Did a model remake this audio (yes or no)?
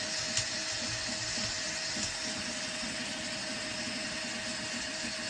no